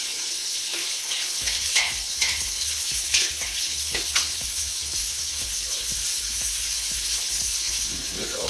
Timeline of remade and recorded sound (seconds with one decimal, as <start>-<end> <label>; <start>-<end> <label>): 0.0-8.5 remade